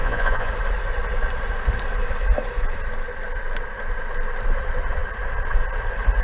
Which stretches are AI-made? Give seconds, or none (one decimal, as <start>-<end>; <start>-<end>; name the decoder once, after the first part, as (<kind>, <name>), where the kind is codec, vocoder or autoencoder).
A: 0.0-0.5 (vocoder, Vocos)

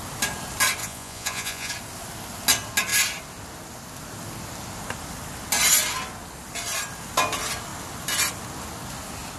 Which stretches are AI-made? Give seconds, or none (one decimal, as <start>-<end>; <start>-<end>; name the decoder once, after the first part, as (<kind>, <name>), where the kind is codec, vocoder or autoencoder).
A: 0.8-1.7 (vocoder, Vocos)

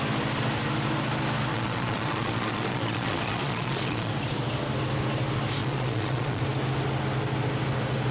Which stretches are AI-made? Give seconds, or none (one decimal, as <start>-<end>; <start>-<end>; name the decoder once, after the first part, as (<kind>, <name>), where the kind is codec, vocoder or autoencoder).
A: 1.5-4.1 (vocoder, Vocos); 5.6-6.4

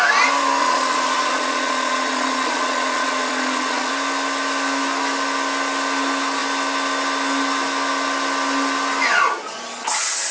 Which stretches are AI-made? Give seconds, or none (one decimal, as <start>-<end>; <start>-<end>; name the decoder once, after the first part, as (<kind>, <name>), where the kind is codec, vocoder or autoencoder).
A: 0.6-3.9 (vocoder, Vocos)

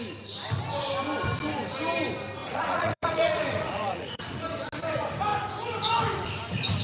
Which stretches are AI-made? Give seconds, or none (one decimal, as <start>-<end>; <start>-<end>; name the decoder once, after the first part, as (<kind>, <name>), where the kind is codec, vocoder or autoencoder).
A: 2.4-4.3 (vocoder, Vocos)

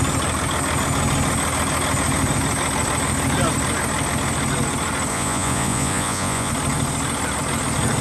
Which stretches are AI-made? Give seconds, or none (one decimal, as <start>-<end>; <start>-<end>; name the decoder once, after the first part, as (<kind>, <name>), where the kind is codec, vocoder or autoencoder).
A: 5.1-6.5 (vocoder, Vocos)